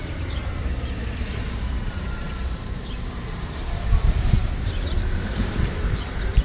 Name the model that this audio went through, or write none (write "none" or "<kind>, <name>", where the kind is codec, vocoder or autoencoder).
vocoder, BigVGAN v2